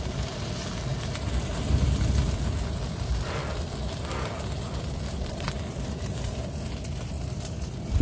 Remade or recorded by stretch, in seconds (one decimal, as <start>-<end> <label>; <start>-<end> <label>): 0.0-3.4 recorded; 3.4-6.7 remade; 6.7-8.0 recorded